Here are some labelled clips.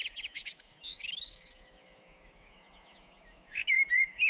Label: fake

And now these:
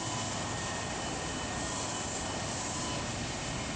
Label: real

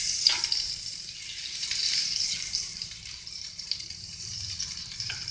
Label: fake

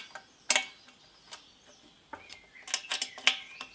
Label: real